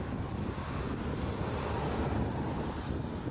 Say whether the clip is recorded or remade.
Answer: recorded